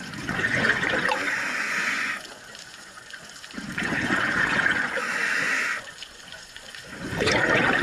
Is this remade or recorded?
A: remade